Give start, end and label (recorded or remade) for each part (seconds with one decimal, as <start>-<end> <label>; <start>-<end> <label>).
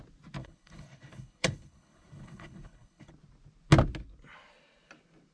0.0-0.4 recorded; 0.4-3.1 remade; 3.1-5.3 recorded